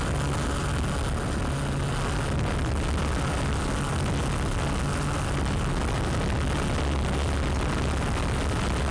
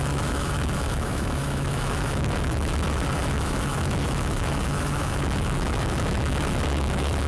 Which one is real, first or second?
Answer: first